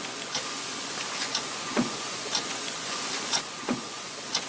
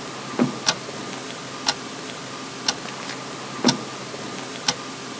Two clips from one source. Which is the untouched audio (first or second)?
second